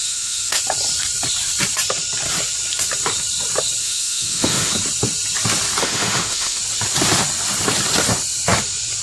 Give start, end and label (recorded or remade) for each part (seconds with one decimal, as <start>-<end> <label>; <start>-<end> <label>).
0.0-0.6 remade; 0.6-3.8 recorded; 3.8-4.7 remade; 4.7-5.8 recorded; 5.8-6.6 remade; 6.6-9.0 recorded